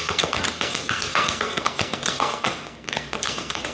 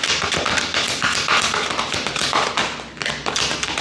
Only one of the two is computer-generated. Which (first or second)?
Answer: first